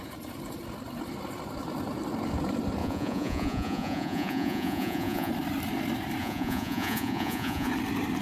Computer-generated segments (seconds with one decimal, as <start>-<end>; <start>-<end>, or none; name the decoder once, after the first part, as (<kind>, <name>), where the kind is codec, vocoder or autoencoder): 2.8-5.3 (vocoder, Vocos); 6.2-7.7